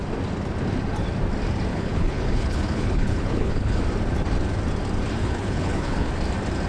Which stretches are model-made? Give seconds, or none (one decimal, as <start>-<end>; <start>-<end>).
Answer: 1.7-3.8; 5.2-6.1

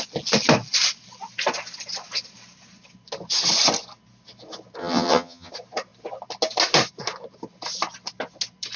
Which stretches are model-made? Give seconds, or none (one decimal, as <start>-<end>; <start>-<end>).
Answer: 4.8-5.5

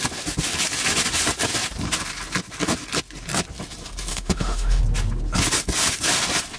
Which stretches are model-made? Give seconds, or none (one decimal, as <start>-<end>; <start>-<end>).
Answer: 4.1-4.8

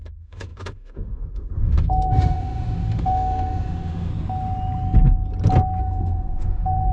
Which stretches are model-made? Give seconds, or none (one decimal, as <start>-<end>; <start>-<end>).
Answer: 0.0-4.1; 5.8-6.9

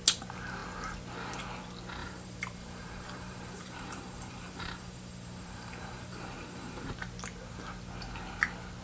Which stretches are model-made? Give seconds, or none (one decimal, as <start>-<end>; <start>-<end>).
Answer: 2.0-6.9

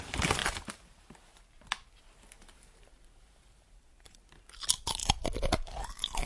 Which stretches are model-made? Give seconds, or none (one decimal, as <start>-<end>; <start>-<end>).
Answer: 0.4-4.2; 5.0-6.3

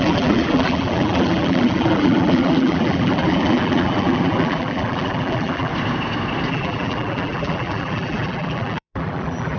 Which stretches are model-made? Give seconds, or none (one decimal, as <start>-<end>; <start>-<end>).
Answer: 0.0-5.7; 6.5-9.6

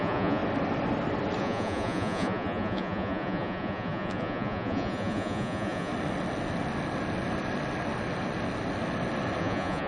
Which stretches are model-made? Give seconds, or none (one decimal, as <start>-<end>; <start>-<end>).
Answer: 0.0-0.4; 1.4-5.9; 9.4-9.9